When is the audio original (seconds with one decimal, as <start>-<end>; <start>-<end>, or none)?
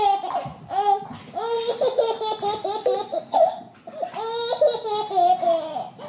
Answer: 0.0-3.1; 3.7-6.1